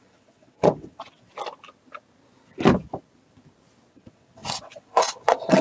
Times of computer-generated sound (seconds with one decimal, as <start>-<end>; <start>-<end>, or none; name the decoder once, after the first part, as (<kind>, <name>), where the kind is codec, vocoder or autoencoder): 0.0-1.3 (vocoder, WaveNeXt); 3.9-5.6